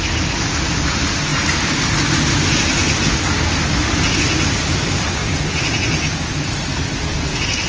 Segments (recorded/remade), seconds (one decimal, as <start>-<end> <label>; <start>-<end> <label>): 0.0-5.2 recorded; 5.2-6.5 remade; 6.5-7.1 recorded; 7.1-7.7 remade